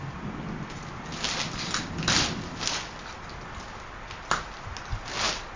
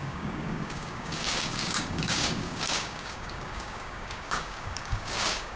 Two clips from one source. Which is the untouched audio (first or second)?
first